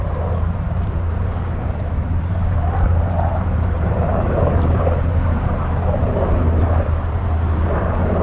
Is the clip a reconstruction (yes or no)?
yes